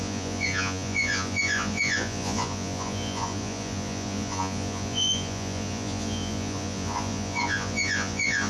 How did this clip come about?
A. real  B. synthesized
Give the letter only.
B